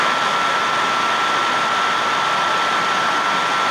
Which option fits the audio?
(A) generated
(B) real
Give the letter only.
B